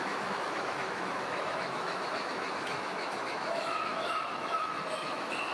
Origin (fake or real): fake